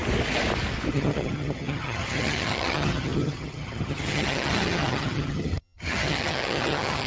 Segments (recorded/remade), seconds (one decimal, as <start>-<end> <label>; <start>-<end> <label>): 0.0-0.9 recorded; 0.9-7.1 remade